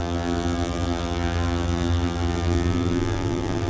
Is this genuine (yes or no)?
no